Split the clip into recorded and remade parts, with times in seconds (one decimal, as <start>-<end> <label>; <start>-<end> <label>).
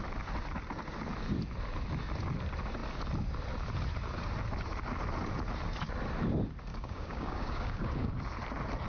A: 0.0-6.7 recorded; 6.7-8.1 remade; 8.1-8.9 recorded